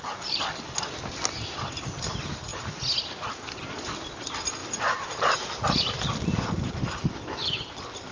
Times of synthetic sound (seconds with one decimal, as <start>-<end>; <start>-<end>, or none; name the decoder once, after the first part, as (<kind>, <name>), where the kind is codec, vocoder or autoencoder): 6.8-7.6 (autoencoder, DAC-VAE)